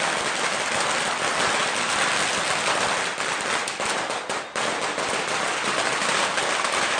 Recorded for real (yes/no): yes